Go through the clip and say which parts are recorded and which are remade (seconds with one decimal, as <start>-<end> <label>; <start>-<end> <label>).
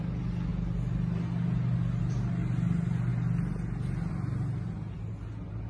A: 0.0-5.7 recorded